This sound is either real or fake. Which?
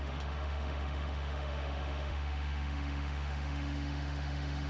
fake